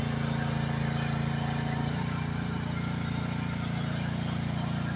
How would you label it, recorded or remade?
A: recorded